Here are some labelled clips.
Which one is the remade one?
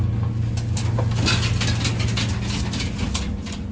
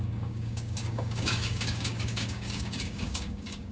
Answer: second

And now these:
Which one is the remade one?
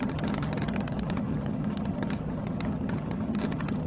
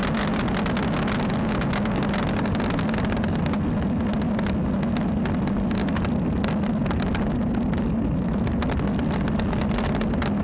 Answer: first